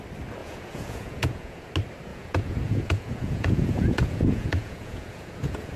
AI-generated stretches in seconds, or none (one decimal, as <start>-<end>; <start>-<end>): 0.4-1.7; 2.1-5.8